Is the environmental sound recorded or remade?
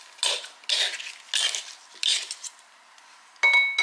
recorded